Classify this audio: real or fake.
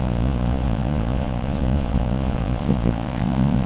fake